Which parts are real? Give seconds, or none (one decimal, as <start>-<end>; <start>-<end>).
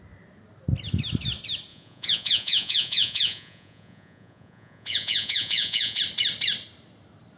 0.0-1.7; 6.0-7.4